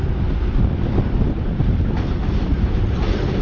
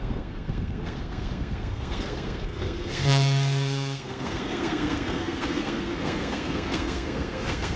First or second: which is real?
first